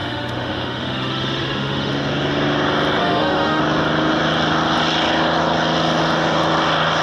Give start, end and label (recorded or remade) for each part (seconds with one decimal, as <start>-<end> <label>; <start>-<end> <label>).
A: 0.0-1.9 remade; 1.9-3.0 recorded; 3.0-3.6 remade; 3.6-7.0 recorded